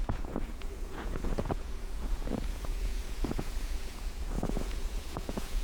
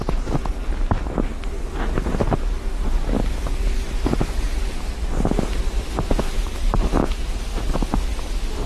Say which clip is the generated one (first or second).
first